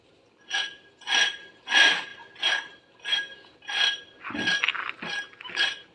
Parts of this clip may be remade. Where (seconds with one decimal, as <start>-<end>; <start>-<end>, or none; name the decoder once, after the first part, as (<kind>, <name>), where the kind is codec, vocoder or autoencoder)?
none